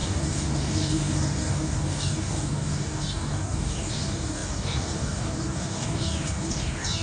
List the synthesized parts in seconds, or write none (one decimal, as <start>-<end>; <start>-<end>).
0.0-7.0